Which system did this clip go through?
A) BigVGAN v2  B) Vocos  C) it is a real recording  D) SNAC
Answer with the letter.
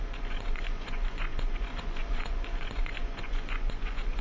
B